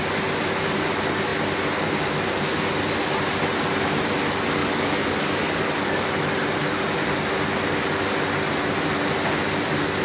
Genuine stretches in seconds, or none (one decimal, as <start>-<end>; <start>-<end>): 0.0-4.6; 6.2-10.0